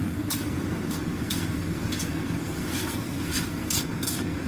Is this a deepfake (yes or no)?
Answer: yes